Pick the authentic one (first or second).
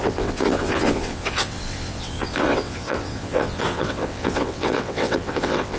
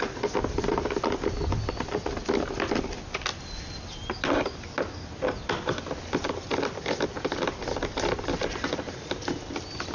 second